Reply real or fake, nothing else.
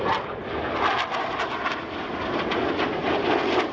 real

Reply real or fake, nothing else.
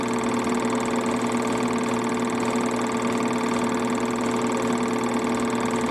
real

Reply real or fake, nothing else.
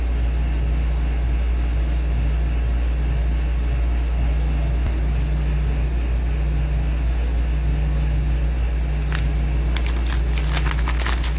real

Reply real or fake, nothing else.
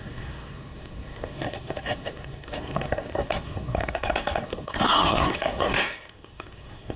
fake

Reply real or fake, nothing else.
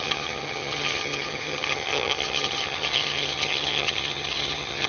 fake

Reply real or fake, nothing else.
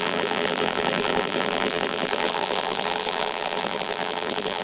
fake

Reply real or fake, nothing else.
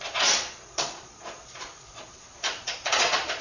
fake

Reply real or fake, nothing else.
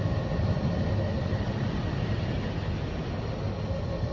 real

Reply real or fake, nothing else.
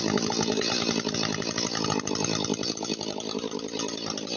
real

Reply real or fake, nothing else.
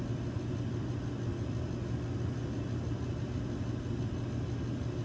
real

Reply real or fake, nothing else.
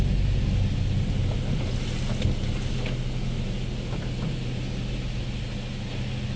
real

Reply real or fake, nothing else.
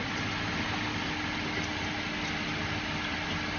real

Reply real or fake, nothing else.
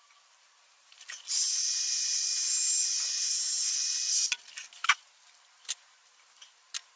real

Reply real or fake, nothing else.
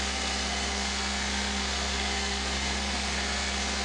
fake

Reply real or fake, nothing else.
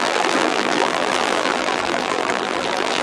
fake